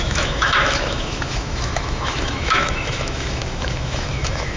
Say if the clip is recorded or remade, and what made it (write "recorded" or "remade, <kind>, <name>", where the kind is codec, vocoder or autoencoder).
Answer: remade, autoencoder, DAC-VAE